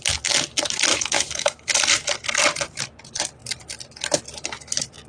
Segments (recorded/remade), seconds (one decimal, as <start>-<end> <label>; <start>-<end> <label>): 0.0-0.9 recorded; 0.9-1.7 remade; 1.7-5.1 recorded